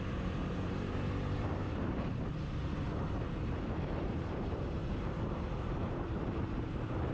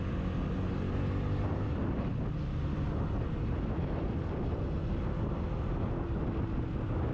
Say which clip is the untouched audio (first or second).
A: second